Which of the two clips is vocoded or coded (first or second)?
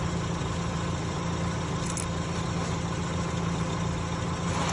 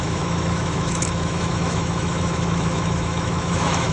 second